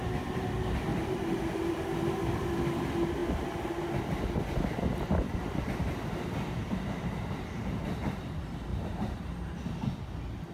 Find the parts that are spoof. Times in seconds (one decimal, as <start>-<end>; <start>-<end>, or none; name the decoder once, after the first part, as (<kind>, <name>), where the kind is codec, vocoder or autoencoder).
0.9-1.4 (vocoder, BigVGAN v2); 6.6-8.2; 8.7-9.5